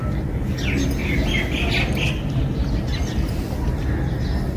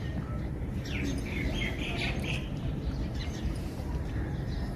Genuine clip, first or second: first